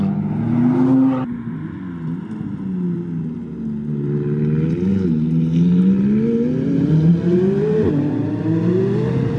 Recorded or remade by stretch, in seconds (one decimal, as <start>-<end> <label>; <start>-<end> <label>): 0.0-9.4 recorded